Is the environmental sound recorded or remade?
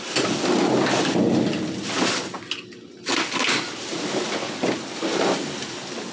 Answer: recorded